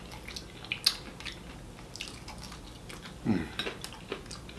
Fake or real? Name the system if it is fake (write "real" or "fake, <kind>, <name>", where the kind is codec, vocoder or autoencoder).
real